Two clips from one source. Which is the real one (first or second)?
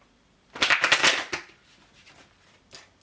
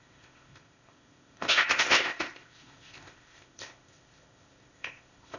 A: first